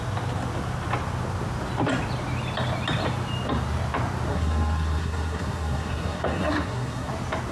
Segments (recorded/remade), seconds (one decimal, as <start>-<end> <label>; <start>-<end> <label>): 0.0-4.3 recorded; 4.3-7.1 remade; 7.1-7.5 recorded